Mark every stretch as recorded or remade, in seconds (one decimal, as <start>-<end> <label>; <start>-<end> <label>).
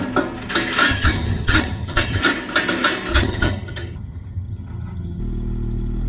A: 0.0-0.9 recorded; 0.9-2.2 remade; 2.2-3.1 recorded; 3.1-5.2 remade; 5.2-6.1 recorded